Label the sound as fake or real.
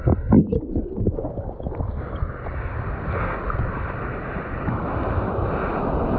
real